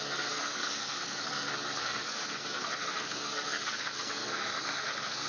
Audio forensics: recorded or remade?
remade